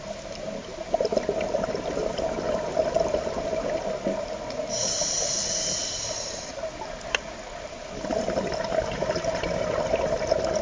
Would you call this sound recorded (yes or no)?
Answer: yes